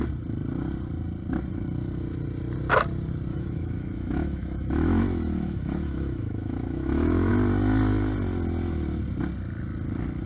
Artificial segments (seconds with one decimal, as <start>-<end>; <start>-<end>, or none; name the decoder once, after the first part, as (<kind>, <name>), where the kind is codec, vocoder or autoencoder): 3.3-7.3 (autoencoder, DAC-VAE)